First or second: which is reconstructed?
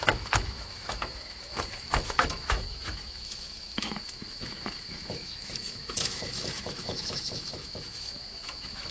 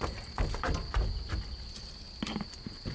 first